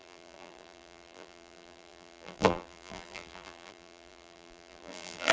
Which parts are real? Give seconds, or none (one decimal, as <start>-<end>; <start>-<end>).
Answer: none